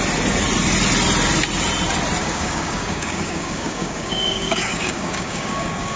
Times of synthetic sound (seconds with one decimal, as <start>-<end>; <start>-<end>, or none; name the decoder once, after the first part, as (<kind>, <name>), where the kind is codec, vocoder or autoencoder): 2.2-6.0 (codec, DAC)